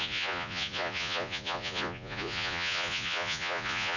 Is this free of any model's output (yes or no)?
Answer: no